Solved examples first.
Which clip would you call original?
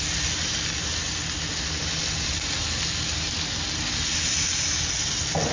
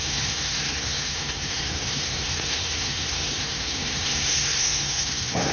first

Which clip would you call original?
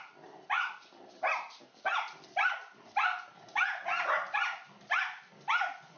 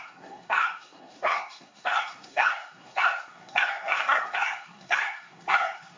first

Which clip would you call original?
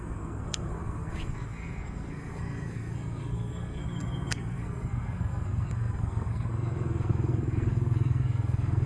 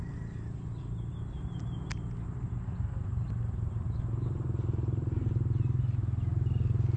second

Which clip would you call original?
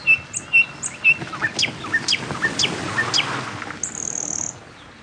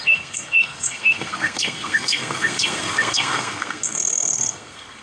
first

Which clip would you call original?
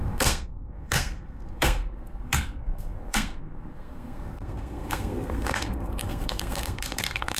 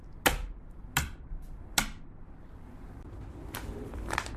second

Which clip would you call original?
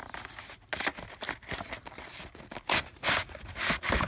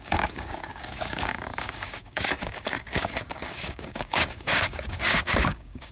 first